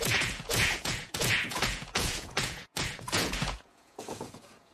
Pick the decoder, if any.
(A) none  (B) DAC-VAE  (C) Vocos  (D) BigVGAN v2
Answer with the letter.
C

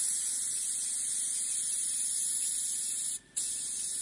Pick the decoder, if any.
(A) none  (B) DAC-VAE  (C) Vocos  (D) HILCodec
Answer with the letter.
A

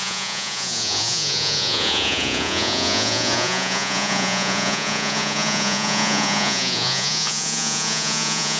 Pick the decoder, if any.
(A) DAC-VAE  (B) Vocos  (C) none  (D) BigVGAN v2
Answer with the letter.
B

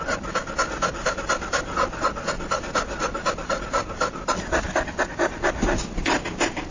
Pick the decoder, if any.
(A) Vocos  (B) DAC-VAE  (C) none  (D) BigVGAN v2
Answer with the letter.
C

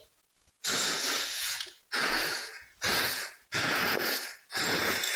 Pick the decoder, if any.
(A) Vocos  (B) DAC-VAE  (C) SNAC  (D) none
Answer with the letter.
A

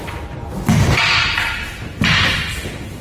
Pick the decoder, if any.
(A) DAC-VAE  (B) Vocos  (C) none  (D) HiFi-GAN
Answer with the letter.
C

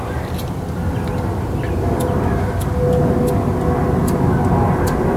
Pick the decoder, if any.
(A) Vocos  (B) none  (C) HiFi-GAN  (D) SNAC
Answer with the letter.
B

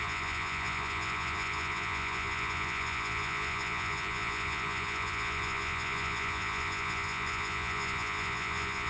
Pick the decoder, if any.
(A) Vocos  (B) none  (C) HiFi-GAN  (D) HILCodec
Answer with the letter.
A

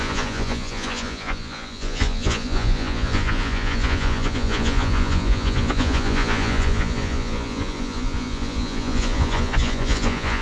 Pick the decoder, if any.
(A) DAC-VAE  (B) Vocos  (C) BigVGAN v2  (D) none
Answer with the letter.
B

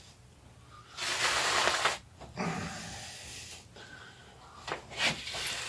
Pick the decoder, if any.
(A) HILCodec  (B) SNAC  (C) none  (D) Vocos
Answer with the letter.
C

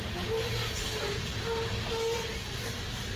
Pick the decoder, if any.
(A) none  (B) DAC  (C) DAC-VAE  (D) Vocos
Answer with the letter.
A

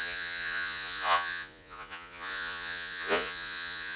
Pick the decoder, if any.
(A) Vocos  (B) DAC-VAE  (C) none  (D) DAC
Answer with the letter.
A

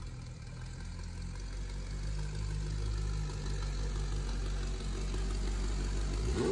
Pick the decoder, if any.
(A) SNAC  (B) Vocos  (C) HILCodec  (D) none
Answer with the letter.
D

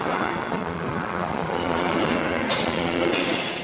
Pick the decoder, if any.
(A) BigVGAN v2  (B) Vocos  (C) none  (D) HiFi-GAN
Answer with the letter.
B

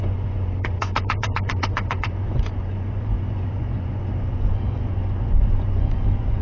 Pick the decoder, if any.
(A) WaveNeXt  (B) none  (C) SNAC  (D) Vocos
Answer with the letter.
D